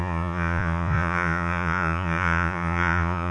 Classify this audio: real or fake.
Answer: fake